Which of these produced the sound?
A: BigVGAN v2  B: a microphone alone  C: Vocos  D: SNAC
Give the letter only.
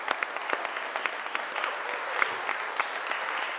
B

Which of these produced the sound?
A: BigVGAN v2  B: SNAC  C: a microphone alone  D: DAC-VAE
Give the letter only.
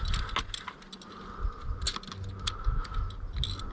C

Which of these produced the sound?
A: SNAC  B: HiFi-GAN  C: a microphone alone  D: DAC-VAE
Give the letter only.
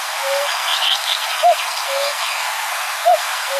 A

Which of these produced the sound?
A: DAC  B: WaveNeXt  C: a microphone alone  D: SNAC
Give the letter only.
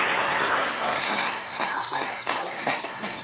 D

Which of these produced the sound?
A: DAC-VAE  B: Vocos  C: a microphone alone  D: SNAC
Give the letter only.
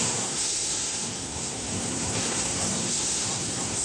D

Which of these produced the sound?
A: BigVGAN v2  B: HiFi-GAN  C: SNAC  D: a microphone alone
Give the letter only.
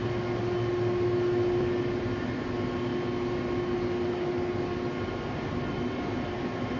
D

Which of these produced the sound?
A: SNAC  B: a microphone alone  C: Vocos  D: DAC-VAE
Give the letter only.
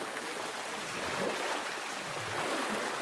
B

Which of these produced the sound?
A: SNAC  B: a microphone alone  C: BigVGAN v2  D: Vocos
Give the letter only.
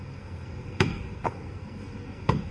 A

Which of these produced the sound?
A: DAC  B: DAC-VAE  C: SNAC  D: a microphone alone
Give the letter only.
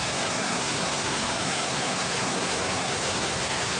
C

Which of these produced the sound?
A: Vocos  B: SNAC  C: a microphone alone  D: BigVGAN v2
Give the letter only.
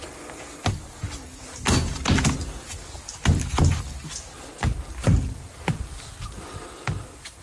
C